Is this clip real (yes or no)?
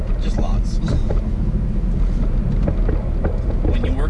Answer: yes